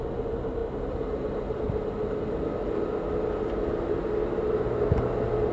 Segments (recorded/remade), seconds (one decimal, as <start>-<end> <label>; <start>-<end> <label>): 0.0-5.5 recorded